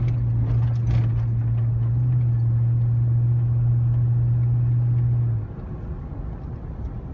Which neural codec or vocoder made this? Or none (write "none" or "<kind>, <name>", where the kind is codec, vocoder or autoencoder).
none